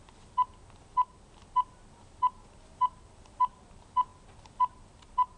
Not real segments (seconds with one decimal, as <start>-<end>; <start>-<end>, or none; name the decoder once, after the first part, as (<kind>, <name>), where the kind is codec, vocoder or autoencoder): none